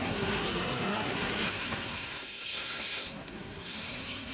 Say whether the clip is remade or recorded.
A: remade